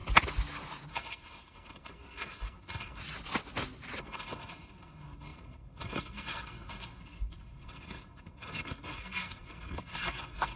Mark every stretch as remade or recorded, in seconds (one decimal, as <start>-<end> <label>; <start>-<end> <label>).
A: 0.0-0.9 recorded; 0.9-3.0 remade; 3.0-4.0 recorded; 4.0-10.6 remade